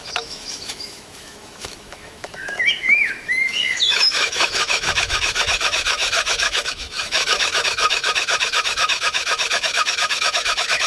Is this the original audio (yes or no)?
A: no